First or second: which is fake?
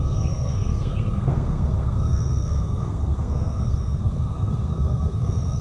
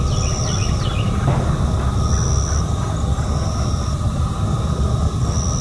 first